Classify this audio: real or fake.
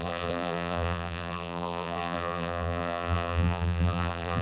fake